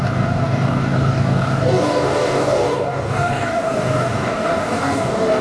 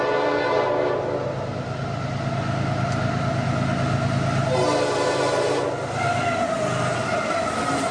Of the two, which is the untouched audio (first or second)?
second